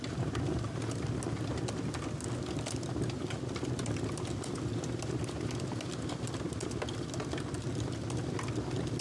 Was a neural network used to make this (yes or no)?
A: no